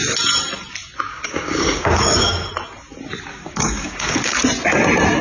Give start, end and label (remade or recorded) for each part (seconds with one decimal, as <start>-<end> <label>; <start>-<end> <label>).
0.0-1.1 recorded; 1.1-2.5 remade; 2.5-3.3 recorded; 3.3-4.4 remade; 4.4-5.2 recorded

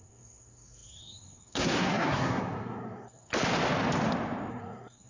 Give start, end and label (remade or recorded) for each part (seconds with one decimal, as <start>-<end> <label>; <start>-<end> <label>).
0.0-3.3 remade; 3.3-4.5 recorded; 4.5-5.1 remade

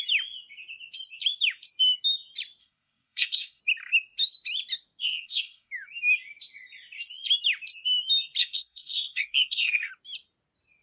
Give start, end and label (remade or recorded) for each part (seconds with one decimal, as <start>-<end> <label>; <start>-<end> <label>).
0.0-2.6 recorded; 2.6-3.6 remade; 3.6-5.0 recorded; 5.0-5.7 remade; 5.7-8.4 recorded; 8.4-9.9 remade; 9.9-10.8 recorded

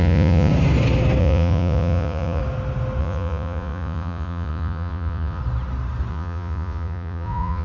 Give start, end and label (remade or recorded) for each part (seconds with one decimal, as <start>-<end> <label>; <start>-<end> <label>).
0.0-0.5 remade; 0.5-1.2 recorded; 1.2-2.4 remade; 2.4-3.0 recorded; 3.0-5.4 remade; 5.4-6.1 recorded; 6.1-7.6 remade

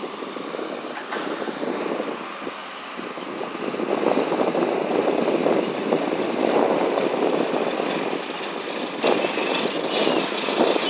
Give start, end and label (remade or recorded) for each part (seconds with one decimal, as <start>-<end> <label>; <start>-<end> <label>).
0.0-2.6 recorded; 2.6-3.3 remade; 3.3-5.4 recorded; 5.4-7.5 remade; 7.5-10.9 recorded